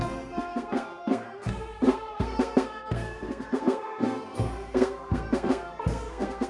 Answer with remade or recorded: remade